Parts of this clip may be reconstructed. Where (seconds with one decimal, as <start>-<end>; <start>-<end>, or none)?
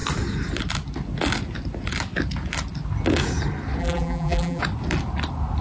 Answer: 3.8-4.6